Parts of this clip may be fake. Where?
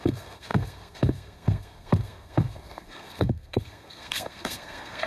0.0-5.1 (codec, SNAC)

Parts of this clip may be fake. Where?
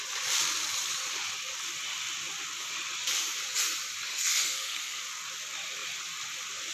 4.1-5.0 (codec, SNAC)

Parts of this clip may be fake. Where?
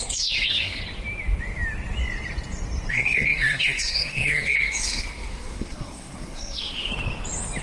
0.0-0.8 (codec, SNAC); 2.9-6.9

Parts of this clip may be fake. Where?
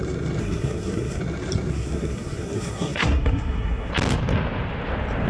0.4-1.2 (codec, SNAC); 1.7-3.9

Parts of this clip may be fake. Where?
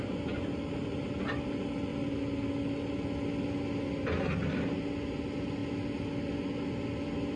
none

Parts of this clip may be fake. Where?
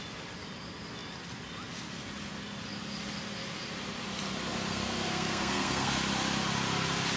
4.7-5.9 (codec, SNAC)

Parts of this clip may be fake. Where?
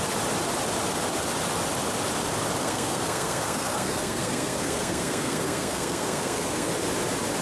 2.6-6.7 (codec, SNAC)